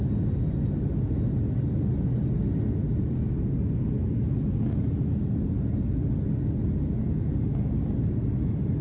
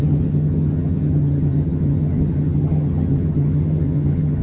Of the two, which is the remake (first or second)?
second